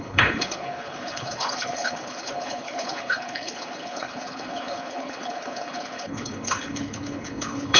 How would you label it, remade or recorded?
remade